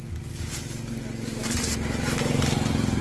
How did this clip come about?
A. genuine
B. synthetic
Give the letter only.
A